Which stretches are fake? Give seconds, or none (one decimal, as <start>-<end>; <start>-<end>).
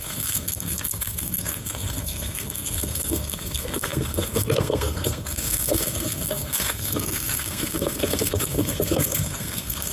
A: 0.0-9.9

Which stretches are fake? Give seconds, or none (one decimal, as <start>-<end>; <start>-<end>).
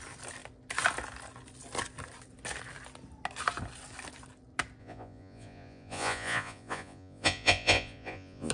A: 4.8-8.5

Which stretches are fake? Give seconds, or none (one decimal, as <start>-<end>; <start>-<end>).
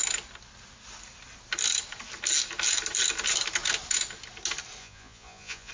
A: 4.8-5.7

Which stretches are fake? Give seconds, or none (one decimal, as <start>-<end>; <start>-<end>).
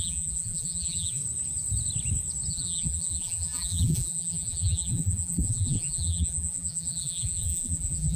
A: 0.0-1.2; 2.5-8.2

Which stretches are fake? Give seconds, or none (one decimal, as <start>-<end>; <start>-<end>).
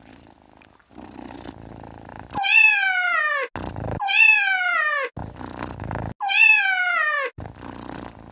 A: none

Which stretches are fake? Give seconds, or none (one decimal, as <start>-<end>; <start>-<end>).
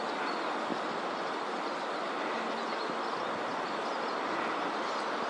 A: none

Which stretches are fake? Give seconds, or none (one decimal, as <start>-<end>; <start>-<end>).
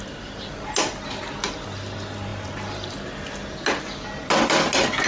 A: none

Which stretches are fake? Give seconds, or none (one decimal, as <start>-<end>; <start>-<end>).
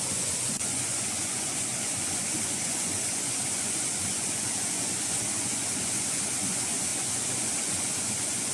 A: 0.0-8.5